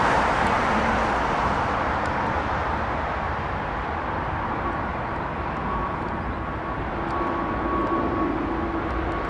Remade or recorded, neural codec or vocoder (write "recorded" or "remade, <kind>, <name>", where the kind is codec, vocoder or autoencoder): recorded